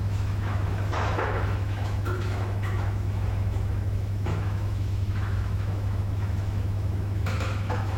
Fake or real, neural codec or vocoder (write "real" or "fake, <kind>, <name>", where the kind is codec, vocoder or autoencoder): fake, autoencoder, DAC-VAE